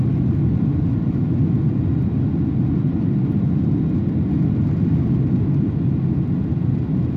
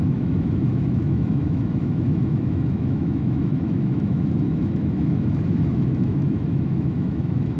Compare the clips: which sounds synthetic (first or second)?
second